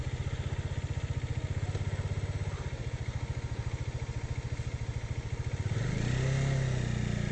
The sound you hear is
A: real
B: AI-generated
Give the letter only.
A